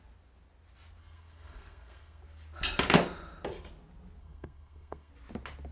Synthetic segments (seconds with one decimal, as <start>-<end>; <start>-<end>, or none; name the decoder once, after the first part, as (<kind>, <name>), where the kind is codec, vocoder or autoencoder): 1.0-2.2 (codec, SNAC); 4.2-5.1